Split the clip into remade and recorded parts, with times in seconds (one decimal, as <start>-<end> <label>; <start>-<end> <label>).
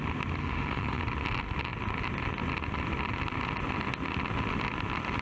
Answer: 0.0-0.4 recorded; 0.4-1.0 remade; 1.0-5.2 recorded